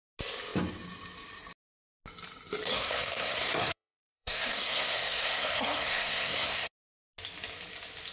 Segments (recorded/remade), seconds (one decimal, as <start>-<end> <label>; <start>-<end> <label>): 0.0-2.7 recorded; 2.7-6.7 remade; 6.7-8.1 recorded